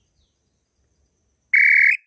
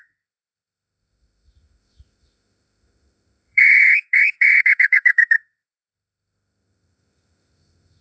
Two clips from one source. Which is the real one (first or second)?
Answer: first